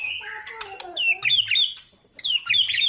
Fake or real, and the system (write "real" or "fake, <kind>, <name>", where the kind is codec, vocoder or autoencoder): real